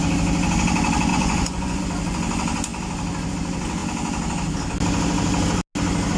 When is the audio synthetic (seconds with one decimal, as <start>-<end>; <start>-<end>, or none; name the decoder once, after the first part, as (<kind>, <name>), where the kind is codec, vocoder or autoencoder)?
1.1-1.8 (vocoder, Vocos)